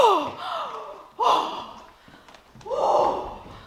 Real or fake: real